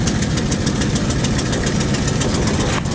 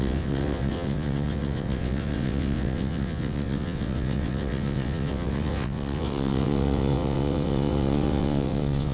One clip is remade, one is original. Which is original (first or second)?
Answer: first